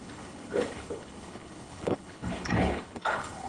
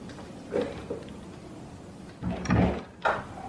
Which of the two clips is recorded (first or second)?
second